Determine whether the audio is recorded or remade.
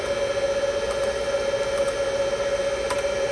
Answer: recorded